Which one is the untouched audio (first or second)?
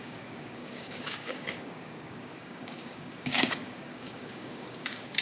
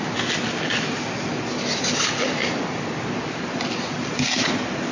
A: second